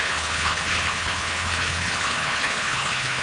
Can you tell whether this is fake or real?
fake